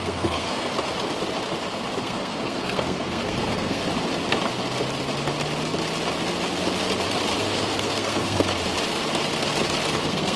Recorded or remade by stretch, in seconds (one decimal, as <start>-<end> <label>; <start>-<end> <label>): 0.0-0.7 remade; 0.7-2.0 recorded; 2.0-3.8 remade; 3.8-7.4 recorded; 7.4-8.5 remade; 8.5-9.9 recorded; 9.9-10.4 remade

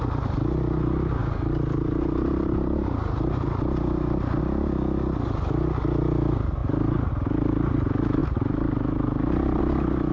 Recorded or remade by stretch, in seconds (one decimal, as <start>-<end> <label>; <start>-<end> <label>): 0.0-1.2 recorded; 1.2-4.4 remade; 4.4-6.6 recorded; 6.6-7.1 remade; 7.1-8.2 recorded; 8.2-9.6 remade; 9.6-10.1 recorded

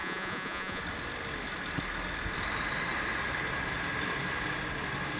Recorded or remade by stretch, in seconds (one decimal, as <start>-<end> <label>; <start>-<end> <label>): 0.0-0.8 remade; 0.8-5.2 recorded